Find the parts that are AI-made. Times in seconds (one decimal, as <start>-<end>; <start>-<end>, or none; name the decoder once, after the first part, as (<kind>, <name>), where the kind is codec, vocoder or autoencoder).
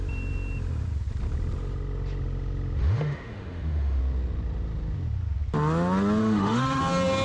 2.8-4.0 (autoencoder, DAC-VAE); 6.2-6.8